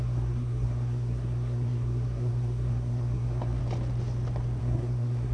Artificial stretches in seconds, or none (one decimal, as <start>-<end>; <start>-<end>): 0.0-3.6; 4.6-5.3